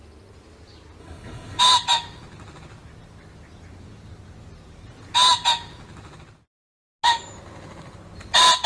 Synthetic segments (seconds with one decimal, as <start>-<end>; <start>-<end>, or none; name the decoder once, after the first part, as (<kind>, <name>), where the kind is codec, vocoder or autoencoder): 1.0-1.6 (codec, HILCodec)